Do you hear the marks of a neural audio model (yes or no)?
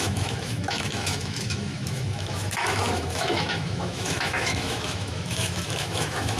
yes